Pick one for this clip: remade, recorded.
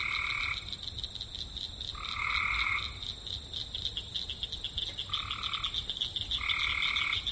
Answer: recorded